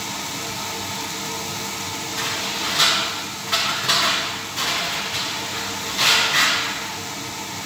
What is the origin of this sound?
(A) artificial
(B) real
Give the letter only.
B